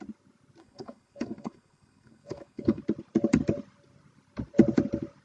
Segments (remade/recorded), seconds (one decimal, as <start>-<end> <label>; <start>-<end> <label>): 0.0-0.6 recorded; 0.6-2.8 remade; 2.8-5.2 recorded